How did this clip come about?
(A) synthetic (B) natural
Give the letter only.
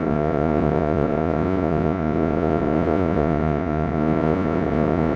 A